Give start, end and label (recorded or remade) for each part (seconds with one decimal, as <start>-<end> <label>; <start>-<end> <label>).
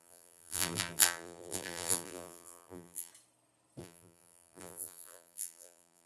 0.0-3.1 remade; 3.1-3.8 recorded; 3.8-6.1 remade